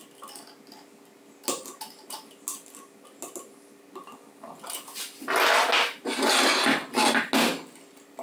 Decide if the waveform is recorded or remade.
recorded